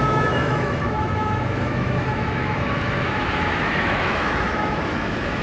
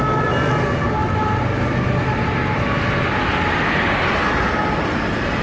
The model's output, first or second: first